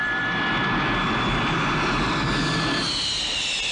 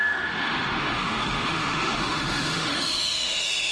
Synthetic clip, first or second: second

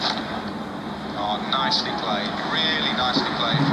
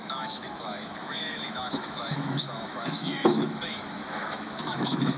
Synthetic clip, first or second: second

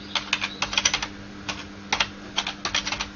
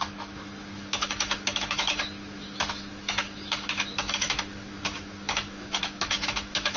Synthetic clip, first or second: second